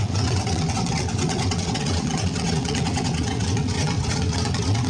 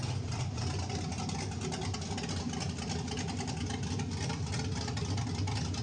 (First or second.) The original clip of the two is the second